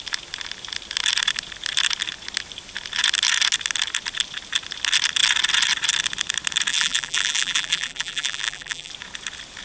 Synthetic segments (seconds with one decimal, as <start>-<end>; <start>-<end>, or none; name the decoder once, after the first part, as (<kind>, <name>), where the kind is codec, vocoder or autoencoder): 6.7-8.9 (vocoder, BigVGAN v2)